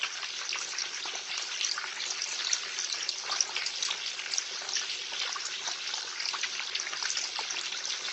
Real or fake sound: real